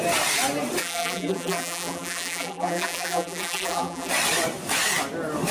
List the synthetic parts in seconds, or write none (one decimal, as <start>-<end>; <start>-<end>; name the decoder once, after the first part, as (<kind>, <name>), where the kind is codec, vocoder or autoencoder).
0.8-4.1 (vocoder, BigVGAN v2)